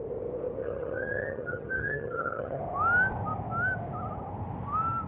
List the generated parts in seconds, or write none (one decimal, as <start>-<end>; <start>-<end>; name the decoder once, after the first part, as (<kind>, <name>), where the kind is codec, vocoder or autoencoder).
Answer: 0.6-2.6 (vocoder, HiFi-GAN)